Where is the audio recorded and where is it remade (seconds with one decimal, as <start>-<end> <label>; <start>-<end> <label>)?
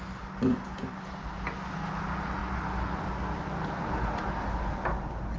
0.0-5.4 recorded